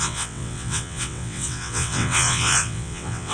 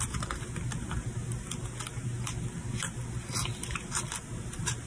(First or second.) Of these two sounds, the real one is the second